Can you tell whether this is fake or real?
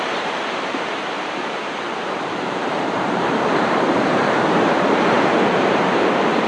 fake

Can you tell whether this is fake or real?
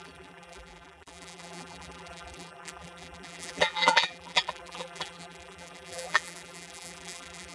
fake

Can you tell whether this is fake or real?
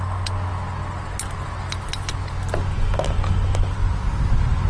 real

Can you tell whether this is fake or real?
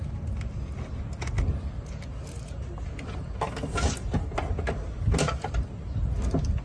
real